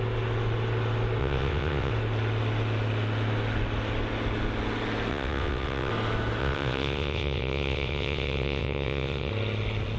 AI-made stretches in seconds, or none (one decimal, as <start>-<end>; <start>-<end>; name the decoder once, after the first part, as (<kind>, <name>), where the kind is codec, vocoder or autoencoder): 1.2-1.9 (vocoder, WaveNeXt); 5.1-5.9; 6.4-9.3